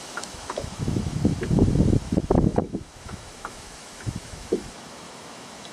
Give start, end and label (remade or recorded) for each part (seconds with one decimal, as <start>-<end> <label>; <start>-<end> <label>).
0.0-1.3 remade; 1.3-2.0 recorded; 2.0-5.7 remade